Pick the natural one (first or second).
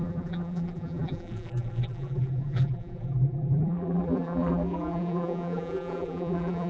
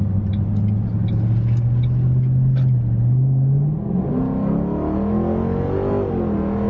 second